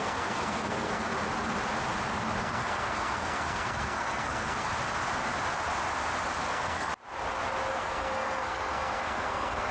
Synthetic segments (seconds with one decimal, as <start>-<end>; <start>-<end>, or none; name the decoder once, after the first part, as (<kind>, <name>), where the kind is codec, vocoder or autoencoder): 0.0-1.1 (codec, SNAC); 2.4-4.7; 6.5-6.9; 7.7-9.7